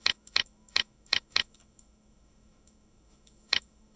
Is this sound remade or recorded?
remade